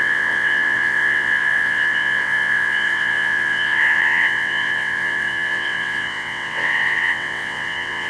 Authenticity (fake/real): fake